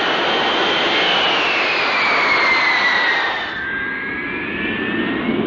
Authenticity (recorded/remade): recorded